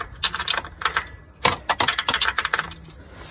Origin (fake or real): real